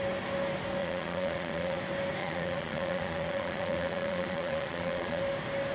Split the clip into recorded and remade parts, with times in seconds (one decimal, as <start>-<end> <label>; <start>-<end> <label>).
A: 0.0-0.8 recorded; 0.8-1.8 remade; 1.8-2.2 recorded; 2.2-5.2 remade; 5.2-5.7 recorded